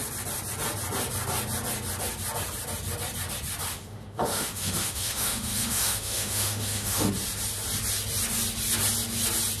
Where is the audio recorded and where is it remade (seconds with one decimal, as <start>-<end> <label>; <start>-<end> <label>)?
0.0-3.7 recorded; 3.7-7.1 remade; 7.1-9.6 recorded